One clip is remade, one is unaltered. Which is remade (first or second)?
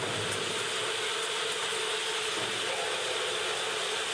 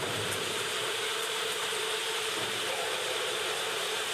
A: second